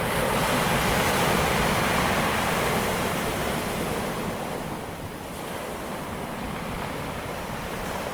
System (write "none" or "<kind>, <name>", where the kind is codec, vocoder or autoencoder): vocoder, BigVGAN v2